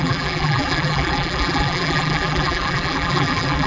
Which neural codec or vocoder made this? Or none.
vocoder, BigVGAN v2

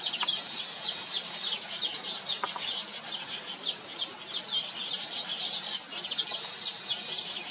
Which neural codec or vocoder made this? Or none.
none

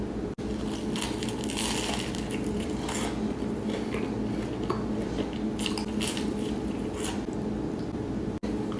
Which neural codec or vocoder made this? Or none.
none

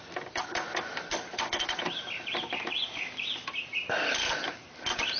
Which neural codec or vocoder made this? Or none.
none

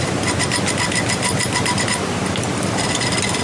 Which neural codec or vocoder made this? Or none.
none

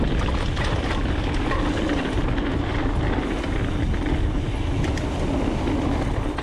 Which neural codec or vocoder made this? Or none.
none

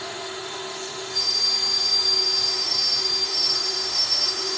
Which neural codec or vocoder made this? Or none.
autoencoder, DAC-VAE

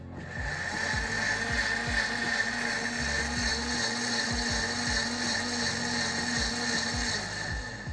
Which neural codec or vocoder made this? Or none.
none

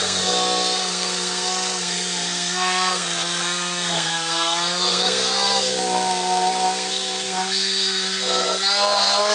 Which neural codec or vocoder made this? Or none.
codec, SNAC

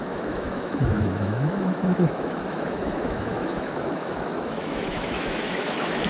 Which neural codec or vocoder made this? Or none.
autoencoder, DAC-VAE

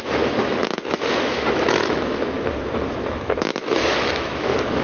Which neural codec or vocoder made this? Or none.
autoencoder, DAC-VAE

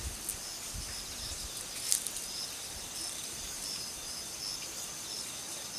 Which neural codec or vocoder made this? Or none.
none